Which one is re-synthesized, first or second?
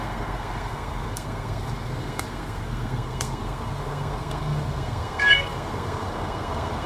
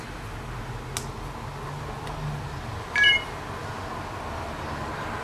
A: first